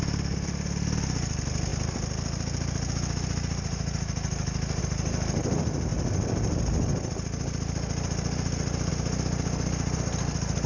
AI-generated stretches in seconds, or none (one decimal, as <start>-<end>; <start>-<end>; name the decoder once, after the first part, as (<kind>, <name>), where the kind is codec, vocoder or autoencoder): none